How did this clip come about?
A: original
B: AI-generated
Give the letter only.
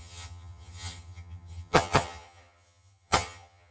B